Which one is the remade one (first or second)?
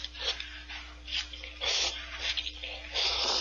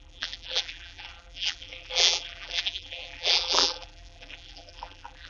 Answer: second